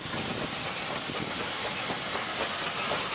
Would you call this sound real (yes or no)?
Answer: yes